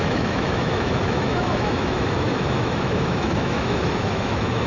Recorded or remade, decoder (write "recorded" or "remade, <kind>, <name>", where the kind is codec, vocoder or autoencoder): remade, autoencoder, DAC-VAE